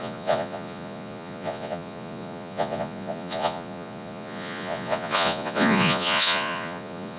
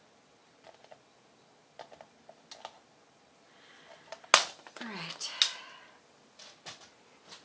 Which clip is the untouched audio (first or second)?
second